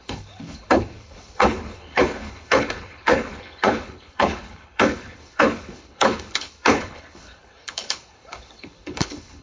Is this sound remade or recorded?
remade